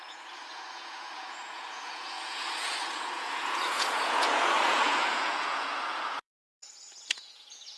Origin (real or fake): fake